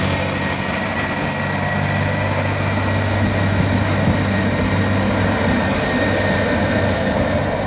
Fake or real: real